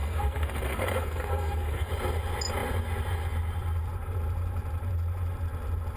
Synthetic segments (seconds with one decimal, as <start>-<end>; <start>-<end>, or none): 0.0-1.9